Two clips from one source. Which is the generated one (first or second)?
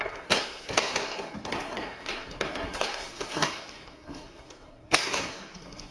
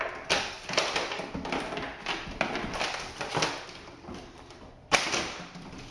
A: first